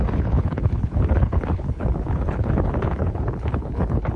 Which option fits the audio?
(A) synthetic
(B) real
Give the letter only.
A